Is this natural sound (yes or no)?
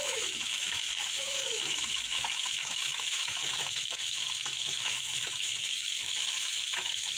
no